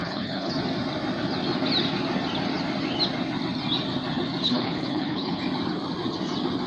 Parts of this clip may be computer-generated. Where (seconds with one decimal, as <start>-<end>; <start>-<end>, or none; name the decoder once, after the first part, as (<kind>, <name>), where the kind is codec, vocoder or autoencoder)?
0.0-0.5 (codec, HILCodec); 4.4-5.4